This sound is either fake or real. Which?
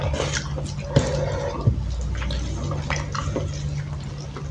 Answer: real